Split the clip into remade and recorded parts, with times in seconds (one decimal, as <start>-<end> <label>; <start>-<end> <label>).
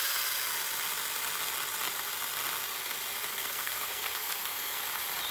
0.0-3.3 recorded; 3.3-4.8 remade; 4.8-5.3 recorded